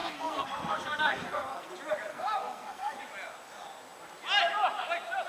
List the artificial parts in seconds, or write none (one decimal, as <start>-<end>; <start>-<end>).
0.0-1.7; 2.1-3.0